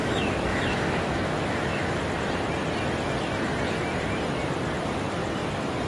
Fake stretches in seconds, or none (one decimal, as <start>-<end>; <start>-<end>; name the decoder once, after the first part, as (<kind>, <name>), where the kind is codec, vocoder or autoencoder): 0.0-2.0 (autoencoder, DAC-VAE)